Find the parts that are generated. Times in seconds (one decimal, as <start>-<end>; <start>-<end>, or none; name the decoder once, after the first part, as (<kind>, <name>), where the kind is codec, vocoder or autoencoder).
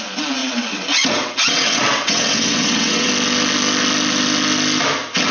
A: 0.4-3.1 (vocoder, WaveNeXt)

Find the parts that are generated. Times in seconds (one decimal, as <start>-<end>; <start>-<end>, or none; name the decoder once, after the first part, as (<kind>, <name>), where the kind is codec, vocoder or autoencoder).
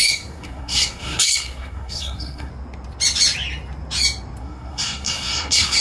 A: 0.0-2.5 (codec, SNAC); 4.4-5.8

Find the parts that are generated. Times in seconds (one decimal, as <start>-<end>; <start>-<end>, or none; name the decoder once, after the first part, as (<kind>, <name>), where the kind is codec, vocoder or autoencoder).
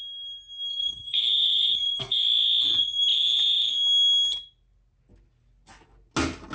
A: 0.7-2.2 (codec, SNAC)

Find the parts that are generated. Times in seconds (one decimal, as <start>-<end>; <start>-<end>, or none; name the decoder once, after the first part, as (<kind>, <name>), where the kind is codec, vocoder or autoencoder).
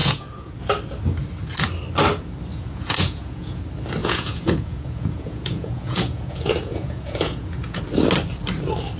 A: 0.0-0.6 (vocoder, Vocos); 2.5-3.6; 4.0-7.8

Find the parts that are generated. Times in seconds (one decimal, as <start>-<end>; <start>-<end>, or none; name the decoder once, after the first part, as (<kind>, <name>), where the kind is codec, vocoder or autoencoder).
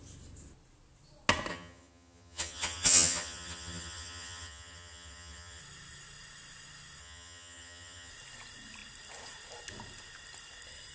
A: 1.5-5.6 (vocoder, HiFi-GAN); 7.0-8.1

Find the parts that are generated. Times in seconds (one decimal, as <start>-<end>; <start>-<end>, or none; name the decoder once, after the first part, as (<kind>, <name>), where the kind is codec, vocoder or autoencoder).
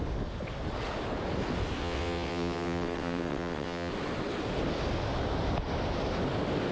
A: 1.8-3.9 (vocoder, WaveNeXt)